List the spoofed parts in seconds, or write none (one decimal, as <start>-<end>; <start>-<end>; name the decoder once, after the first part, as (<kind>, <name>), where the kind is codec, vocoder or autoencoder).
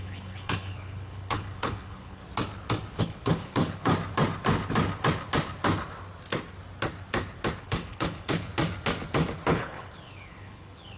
0.0-2.2 (codec, HILCodec); 3.0-3.9; 7.6-8.5; 9.5-11.0